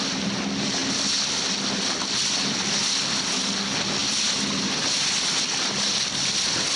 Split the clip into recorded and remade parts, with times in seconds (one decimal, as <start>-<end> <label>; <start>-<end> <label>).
0.0-6.8 recorded